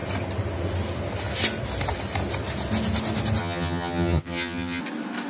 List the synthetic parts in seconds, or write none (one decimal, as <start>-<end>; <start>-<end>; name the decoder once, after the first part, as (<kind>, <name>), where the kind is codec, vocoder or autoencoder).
3.4-4.8 (vocoder, HiFi-GAN)

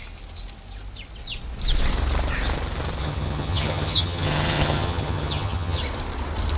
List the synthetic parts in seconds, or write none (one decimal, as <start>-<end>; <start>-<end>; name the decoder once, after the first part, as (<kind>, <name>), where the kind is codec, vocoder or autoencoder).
3.0-5.8 (vocoder, HiFi-GAN)

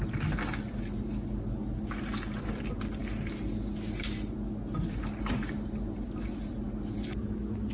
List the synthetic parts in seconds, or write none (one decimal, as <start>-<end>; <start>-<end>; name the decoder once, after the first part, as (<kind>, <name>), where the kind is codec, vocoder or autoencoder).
none